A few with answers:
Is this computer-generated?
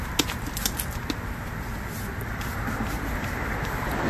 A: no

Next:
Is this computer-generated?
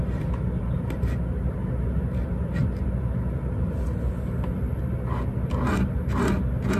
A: no